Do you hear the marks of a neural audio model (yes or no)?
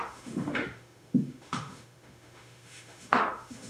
yes